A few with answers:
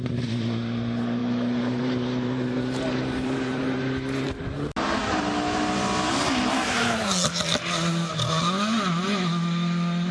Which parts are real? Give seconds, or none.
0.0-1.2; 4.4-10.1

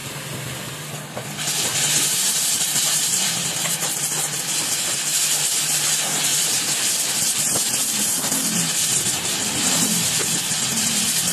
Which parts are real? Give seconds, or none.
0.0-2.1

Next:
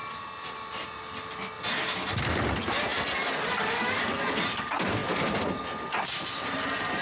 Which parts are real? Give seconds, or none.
0.0-2.1

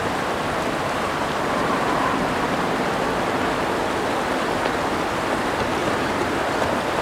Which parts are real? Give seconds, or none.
0.0-5.8; 6.4-7.0

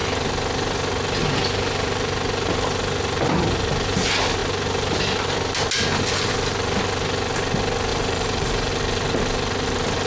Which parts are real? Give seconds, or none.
0.0-7.9; 8.7-10.1